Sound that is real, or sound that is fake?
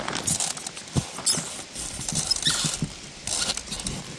real